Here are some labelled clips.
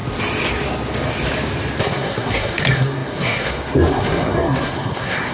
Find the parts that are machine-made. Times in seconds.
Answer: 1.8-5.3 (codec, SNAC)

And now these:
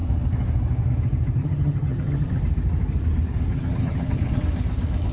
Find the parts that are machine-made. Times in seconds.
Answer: 1.4-2.4 (vocoder, HiFi-GAN); 3.5-4.4

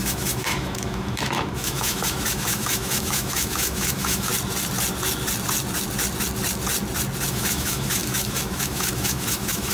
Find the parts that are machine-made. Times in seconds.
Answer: 0.0-4.3 (autoencoder, DAC-VAE); 7.3-9.7

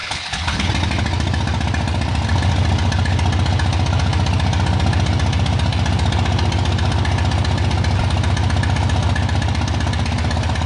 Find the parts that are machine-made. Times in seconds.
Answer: 0.0-0.7 (codec, HILCodec)

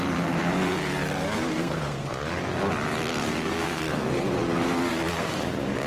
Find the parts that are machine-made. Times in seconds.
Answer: 1.5-2.1 (codec, SNAC); 3.2-3.8